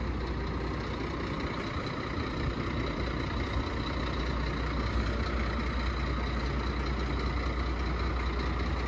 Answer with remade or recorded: recorded